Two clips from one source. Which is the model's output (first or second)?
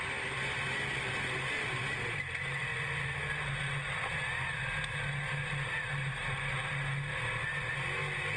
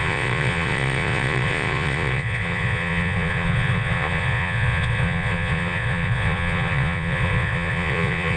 second